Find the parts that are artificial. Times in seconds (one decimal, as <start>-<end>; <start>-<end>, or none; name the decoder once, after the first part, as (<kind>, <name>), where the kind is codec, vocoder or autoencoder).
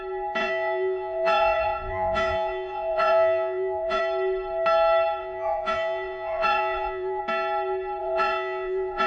0.4-4.0 (vocoder, Vocos); 5.2-7.2; 8.0-9.1